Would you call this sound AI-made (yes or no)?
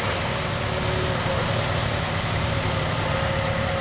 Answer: no